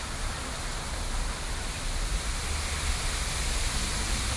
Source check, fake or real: real